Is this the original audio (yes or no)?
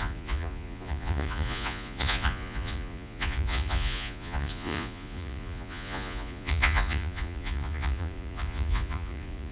no